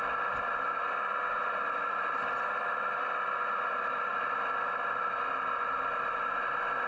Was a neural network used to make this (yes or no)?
no